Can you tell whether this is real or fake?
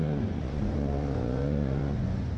fake